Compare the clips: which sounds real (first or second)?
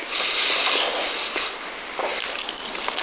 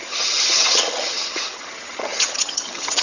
first